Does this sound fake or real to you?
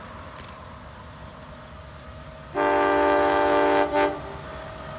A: real